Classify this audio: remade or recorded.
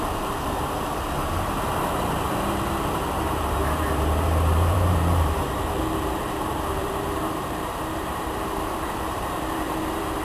remade